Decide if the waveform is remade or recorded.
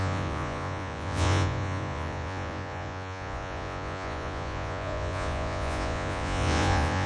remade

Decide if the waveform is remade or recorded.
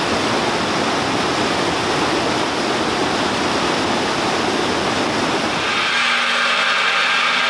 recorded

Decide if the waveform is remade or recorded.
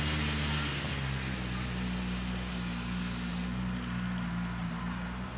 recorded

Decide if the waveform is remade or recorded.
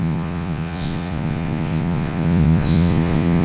remade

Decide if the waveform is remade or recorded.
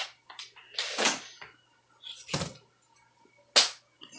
recorded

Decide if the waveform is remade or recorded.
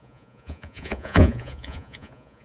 remade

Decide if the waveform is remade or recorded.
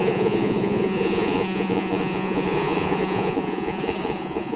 remade